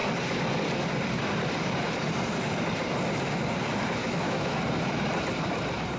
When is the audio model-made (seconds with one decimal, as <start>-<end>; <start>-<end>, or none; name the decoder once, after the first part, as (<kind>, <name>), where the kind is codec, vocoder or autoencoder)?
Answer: 4.0-4.6 (autoencoder, DAC-VAE)